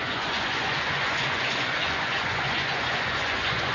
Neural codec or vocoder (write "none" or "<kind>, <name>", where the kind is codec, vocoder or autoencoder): vocoder, Vocos